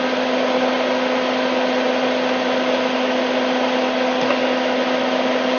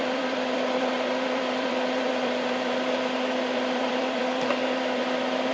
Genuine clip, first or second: first